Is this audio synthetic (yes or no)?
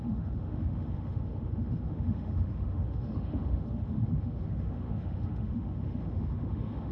yes